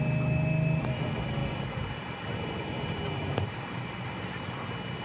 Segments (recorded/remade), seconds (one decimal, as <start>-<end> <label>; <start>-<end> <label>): 0.0-5.0 recorded